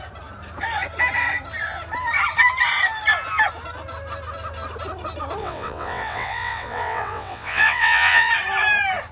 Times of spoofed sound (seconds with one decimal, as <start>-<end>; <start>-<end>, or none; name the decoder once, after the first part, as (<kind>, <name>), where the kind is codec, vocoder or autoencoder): 5.4-8.3 (vocoder, WaveNeXt)